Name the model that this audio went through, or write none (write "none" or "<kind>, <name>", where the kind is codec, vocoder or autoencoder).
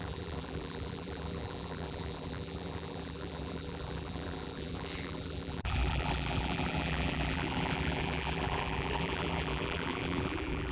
vocoder, BigVGAN v2